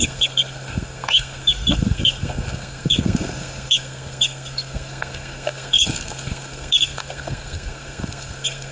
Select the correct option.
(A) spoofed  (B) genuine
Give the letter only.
A